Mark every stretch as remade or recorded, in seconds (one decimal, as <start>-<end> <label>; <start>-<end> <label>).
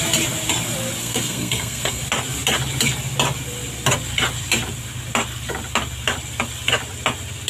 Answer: 0.0-1.0 recorded; 1.0-2.0 remade; 2.0-7.5 recorded